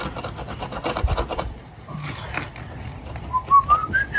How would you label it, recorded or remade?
recorded